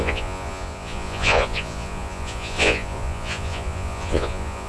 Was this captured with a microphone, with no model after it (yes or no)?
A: no